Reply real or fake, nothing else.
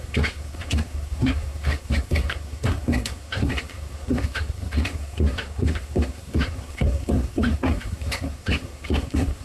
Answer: fake